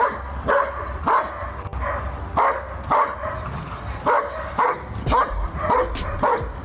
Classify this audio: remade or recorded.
recorded